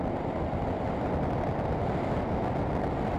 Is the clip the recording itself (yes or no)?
yes